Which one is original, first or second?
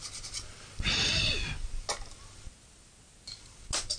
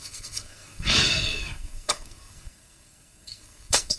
first